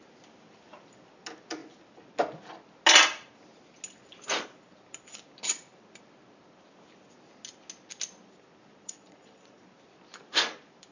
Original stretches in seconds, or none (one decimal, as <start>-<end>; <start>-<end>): 0.0-8.7; 9.6-10.9